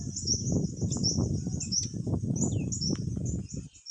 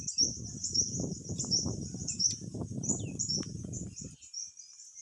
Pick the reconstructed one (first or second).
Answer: second